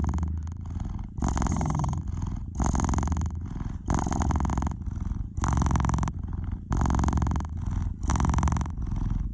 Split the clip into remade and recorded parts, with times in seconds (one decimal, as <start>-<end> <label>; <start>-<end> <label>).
0.0-1.5 recorded; 1.5-2.0 remade; 2.0-9.3 recorded